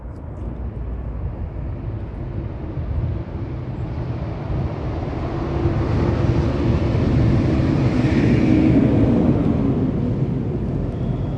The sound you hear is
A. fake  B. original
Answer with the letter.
B